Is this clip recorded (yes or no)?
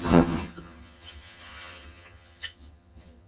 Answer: no